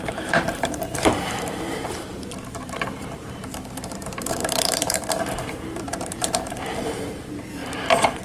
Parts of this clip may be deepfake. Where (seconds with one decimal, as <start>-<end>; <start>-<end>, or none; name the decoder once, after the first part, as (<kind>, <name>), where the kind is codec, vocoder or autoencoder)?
0.0-8.2 (vocoder, BigVGAN v2)